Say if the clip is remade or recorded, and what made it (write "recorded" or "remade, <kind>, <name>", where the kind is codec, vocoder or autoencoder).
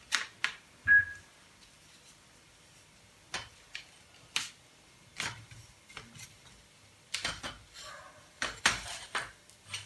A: recorded